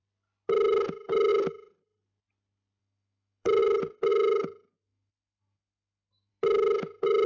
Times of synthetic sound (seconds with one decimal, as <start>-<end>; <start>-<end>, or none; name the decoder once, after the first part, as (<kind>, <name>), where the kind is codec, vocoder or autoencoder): 2.8-3.6 (autoencoder, DAC-VAE); 4.1-6.3